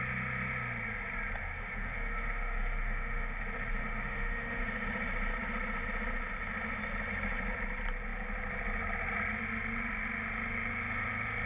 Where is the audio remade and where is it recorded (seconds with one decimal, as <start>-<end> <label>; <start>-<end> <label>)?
0.0-1.4 recorded; 1.4-3.4 remade; 3.4-3.8 recorded; 3.8-4.6 remade; 4.6-11.5 recorded